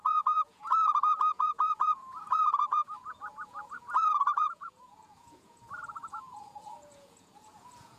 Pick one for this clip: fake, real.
fake